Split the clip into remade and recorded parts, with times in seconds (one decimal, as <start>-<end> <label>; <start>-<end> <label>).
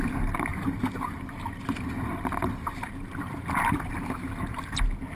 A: 0.0-0.5 recorded; 0.5-1.2 remade; 1.2-2.6 recorded; 2.6-4.3 remade; 4.3-5.1 recorded